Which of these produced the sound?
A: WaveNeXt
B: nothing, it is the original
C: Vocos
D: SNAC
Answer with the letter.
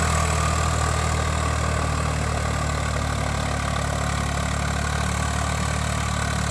B